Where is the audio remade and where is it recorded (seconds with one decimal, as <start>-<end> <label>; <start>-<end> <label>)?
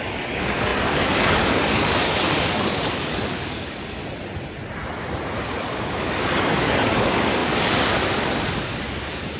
0.0-4.0 remade; 4.0-5.6 recorded; 5.6-9.4 remade